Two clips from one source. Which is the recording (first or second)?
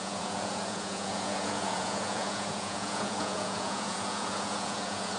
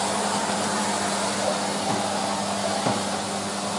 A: second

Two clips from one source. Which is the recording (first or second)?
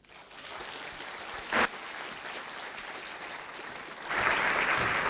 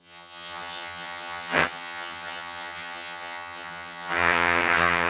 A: first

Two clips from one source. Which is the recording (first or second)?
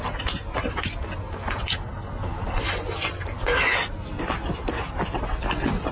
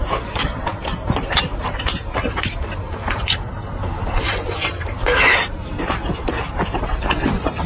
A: first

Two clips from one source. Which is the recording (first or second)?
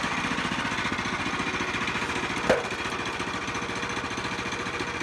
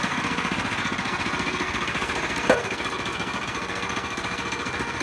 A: first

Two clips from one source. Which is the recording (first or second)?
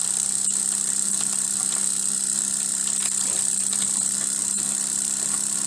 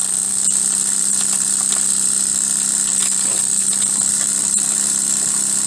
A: second